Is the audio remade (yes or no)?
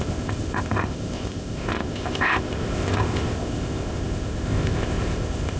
yes